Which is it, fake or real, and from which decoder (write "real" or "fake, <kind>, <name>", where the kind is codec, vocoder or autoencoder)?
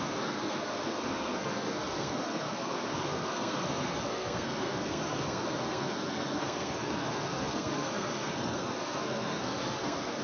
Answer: fake, codec, SNAC